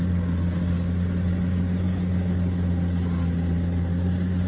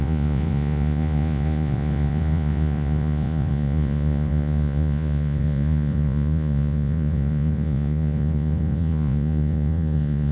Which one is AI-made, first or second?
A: second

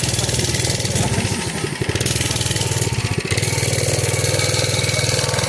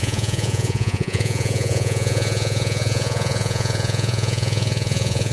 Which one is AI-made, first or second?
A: second